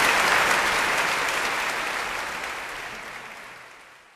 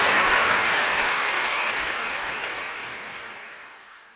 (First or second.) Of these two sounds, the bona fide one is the first